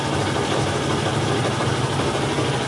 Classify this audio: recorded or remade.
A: recorded